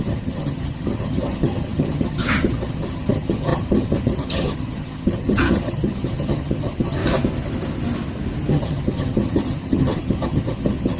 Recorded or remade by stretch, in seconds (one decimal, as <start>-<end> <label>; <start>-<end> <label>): 0.0-7.0 remade; 7.0-8.5 recorded; 8.5-11.0 remade